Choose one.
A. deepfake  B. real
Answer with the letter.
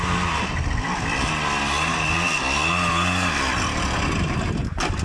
B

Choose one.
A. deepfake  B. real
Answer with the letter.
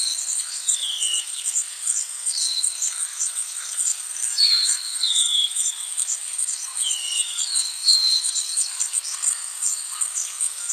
A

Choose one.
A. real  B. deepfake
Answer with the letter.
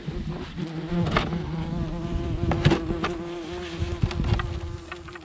A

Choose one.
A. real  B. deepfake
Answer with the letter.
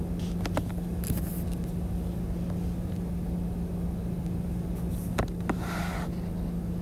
A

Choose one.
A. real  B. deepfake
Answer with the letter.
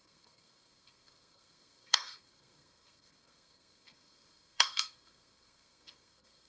B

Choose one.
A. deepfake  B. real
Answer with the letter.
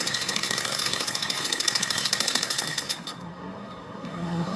A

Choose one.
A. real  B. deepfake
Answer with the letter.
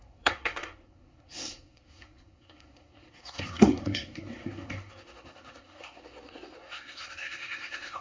B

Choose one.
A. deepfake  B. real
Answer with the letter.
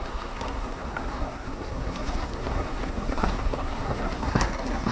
A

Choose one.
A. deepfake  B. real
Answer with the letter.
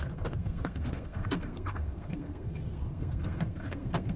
A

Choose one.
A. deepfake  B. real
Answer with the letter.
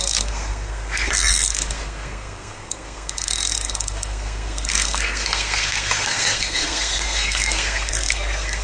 A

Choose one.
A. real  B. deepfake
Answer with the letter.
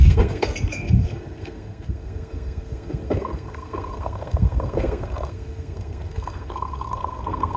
B